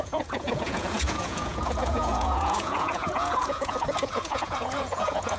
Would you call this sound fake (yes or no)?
yes